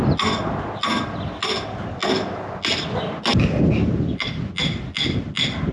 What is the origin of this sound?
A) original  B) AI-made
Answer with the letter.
A